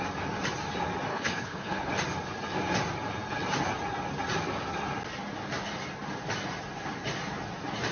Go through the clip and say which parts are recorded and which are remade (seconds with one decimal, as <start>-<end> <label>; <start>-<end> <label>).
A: 0.0-1.1 recorded; 1.1-1.9 remade; 1.9-7.9 recorded